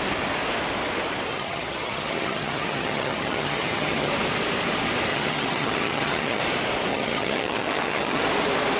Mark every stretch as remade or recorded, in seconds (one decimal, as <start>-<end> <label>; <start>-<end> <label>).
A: 0.0-1.3 recorded; 1.3-4.1 remade; 4.1-5.1 recorded; 5.1-6.4 remade; 6.4-6.9 recorded; 6.9-8.2 remade; 8.2-8.8 recorded